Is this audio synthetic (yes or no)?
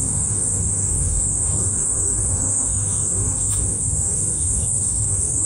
yes